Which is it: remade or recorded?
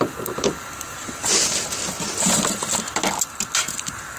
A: recorded